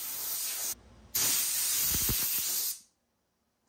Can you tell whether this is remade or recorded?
recorded